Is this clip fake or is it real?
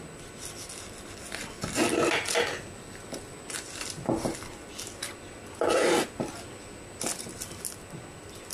real